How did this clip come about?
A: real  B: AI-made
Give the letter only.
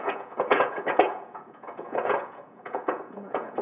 B